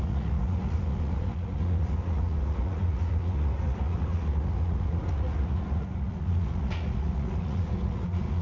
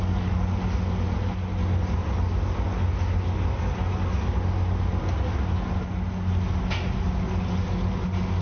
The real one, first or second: second